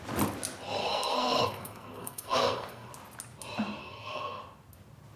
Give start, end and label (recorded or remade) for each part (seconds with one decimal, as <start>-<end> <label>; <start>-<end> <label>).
0.0-0.8 recorded; 0.8-2.9 remade; 2.9-3.8 recorded; 3.8-4.4 remade; 4.4-5.2 recorded